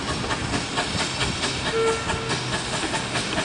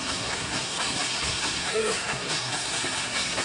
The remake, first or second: second